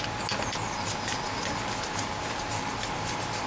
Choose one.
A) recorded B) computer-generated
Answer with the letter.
A